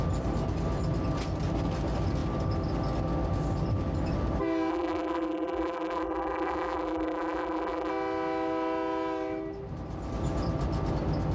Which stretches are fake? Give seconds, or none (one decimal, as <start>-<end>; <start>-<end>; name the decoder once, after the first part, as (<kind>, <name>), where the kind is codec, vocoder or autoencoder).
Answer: 4.7-7.9 (vocoder, BigVGAN v2)